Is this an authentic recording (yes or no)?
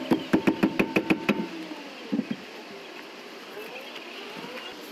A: yes